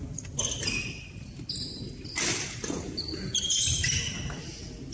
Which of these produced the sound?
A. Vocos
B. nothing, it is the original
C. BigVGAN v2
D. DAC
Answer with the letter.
B